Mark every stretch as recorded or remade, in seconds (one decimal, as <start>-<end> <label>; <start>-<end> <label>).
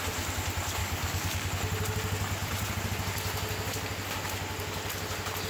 0.0-0.8 recorded; 0.8-1.5 remade; 1.5-5.5 recorded